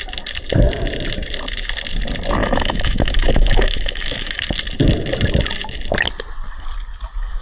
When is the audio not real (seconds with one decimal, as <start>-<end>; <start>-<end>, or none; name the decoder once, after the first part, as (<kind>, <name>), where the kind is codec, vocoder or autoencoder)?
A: 2.4-4.4 (autoencoder, DAC-VAE)